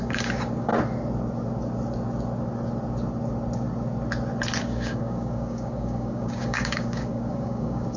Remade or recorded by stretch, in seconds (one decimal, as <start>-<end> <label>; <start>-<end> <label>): 0.0-0.7 remade; 0.7-4.6 recorded; 4.6-8.0 remade